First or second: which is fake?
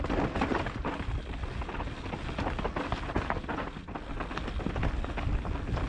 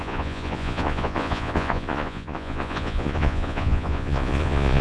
second